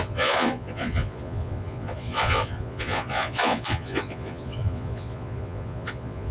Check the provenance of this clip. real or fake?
fake